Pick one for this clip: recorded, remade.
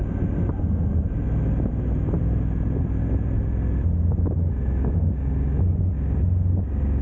recorded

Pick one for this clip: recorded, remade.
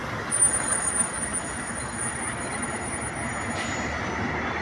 recorded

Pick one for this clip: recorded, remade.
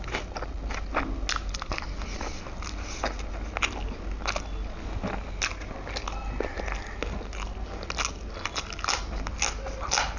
recorded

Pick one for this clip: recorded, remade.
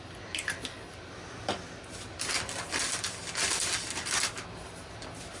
recorded